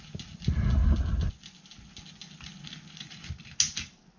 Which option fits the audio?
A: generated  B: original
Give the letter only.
B